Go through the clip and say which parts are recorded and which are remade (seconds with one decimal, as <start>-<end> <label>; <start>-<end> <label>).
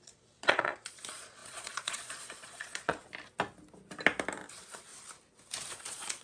0.0-3.0 remade; 3.0-4.5 recorded; 4.5-4.9 remade; 4.9-5.7 recorded; 5.7-6.2 remade